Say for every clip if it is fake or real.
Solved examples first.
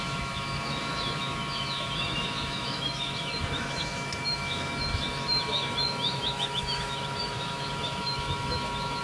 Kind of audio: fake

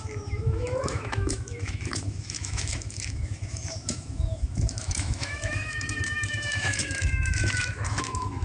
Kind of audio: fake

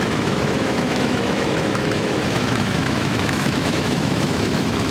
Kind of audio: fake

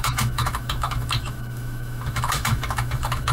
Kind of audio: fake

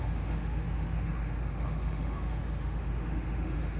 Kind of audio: fake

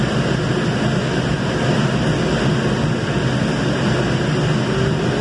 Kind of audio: real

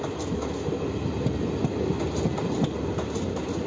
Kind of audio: real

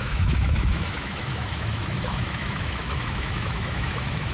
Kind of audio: fake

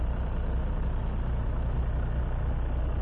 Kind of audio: real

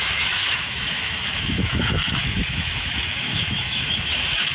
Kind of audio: fake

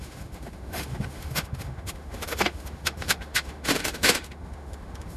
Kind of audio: fake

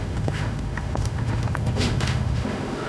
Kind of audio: fake